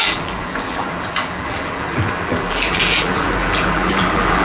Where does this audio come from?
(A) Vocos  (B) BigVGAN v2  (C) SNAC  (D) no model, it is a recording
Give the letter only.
B